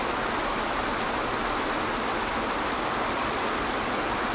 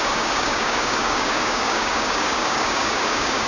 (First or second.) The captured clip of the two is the first